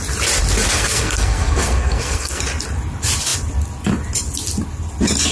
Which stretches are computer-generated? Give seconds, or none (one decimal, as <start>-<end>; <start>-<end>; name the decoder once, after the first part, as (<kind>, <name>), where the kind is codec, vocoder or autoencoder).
0.7-2.4 (codec, SNAC)